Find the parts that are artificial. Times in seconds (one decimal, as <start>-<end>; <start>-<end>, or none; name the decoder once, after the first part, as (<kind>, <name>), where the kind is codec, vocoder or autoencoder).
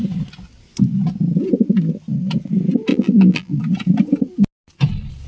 2.9-3.6 (vocoder, BigVGAN v2)